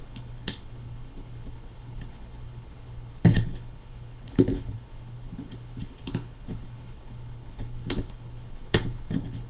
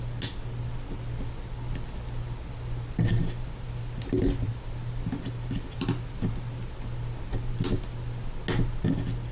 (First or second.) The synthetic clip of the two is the first